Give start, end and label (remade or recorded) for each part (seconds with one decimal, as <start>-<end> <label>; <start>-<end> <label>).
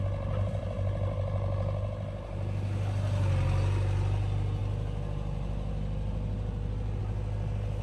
0.0-7.8 recorded